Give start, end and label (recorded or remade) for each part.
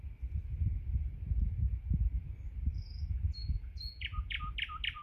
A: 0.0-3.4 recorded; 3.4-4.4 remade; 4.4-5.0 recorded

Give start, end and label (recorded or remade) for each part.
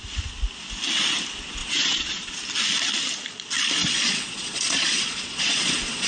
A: 0.0-1.6 recorded; 1.6-2.3 remade; 2.3-3.8 recorded; 3.8-6.1 remade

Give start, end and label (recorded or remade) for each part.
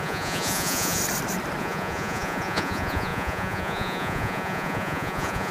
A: 0.0-1.0 remade; 1.0-1.6 recorded; 1.6-5.5 remade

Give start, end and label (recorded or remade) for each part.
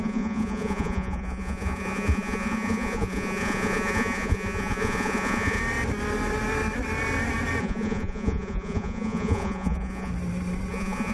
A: 0.0-5.6 remade; 5.6-7.6 recorded; 7.6-10.1 remade; 10.1-10.7 recorded; 10.7-11.1 remade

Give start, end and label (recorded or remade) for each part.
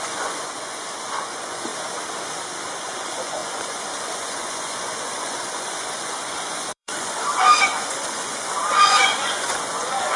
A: 0.0-1.7 remade; 1.7-2.8 recorded; 2.8-10.2 remade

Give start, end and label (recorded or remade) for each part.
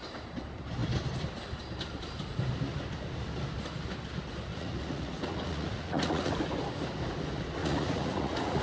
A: 0.0-4.5 recorded; 4.5-6.3 remade; 6.3-7.6 recorded; 7.6-8.6 remade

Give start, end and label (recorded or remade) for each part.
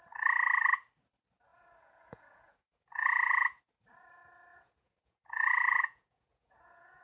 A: 0.0-1.5 recorded; 1.5-3.6 remade; 3.6-4.5 recorded; 4.5-7.0 remade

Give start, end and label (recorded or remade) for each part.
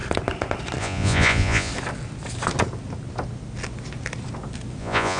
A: 0.0-0.8 recorded; 0.8-1.7 remade; 1.7-4.8 recorded; 4.8-5.2 remade